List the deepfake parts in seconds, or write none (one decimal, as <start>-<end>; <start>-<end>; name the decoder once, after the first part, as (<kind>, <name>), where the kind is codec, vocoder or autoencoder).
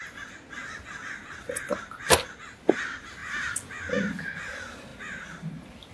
none